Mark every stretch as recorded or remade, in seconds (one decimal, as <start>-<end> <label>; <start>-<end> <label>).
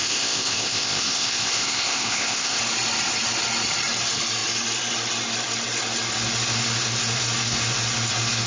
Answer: 0.0-2.6 remade; 2.6-8.5 recorded